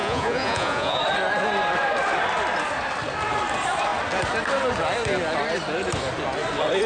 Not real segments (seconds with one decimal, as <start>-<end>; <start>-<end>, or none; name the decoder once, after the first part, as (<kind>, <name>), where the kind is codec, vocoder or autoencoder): 0.0-1.0 (vocoder, Vocos)

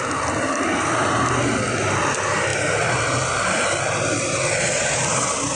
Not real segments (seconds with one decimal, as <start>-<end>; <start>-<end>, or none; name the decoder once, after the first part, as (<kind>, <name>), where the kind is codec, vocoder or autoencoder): none

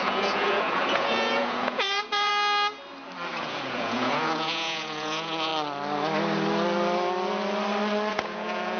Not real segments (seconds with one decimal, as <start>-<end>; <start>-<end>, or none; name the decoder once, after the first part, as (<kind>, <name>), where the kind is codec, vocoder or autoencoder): 0.0-2.3 (vocoder, Vocos); 3.4-5.5; 8.1-8.8

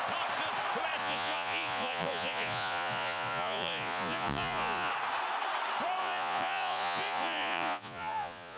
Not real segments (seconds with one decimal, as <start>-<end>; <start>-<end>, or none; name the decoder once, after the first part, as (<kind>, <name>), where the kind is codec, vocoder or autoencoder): 1.0-4.9 (vocoder, Vocos); 6.0-8.6

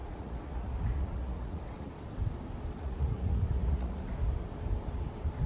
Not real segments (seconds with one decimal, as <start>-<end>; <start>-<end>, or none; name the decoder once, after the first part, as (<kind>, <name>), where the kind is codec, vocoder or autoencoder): 0.0-1.9 (vocoder, Vocos); 2.8-4.0

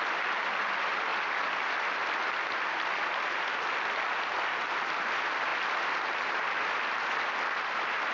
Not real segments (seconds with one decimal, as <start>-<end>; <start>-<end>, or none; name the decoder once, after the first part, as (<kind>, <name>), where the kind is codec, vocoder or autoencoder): none